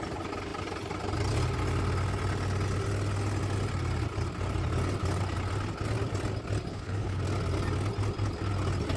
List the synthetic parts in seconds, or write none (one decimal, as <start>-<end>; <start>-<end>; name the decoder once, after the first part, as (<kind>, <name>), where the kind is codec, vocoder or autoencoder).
6.7-7.2 (codec, HILCodec)